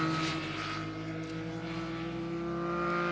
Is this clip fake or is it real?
real